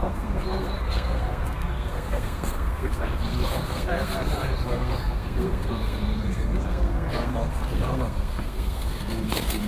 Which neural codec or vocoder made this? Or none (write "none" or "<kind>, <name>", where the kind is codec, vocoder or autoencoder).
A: codec, SNAC